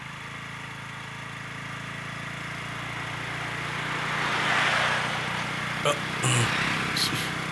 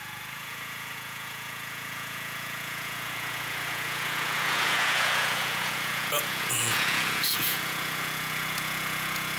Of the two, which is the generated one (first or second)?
second